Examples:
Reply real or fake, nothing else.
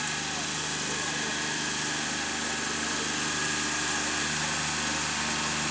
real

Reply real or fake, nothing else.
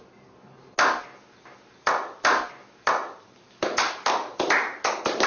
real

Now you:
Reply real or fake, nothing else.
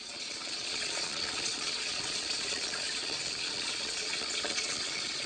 fake